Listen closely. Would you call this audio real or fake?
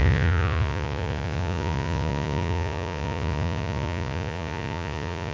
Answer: fake